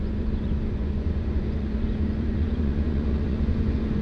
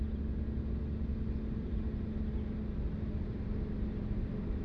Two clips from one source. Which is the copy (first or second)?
first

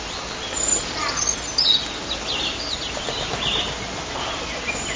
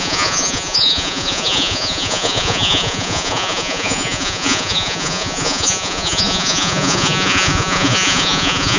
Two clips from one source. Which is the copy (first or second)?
second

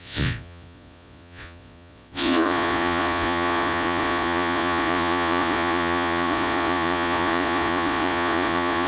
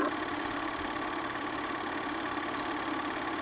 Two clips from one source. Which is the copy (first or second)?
first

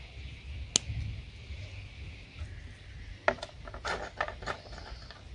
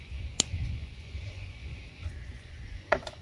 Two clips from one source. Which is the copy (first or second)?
second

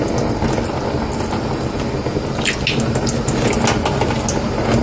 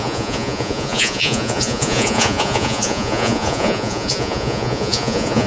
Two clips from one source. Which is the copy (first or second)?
second